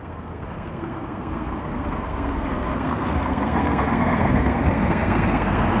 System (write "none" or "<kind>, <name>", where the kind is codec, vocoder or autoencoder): codec, SNAC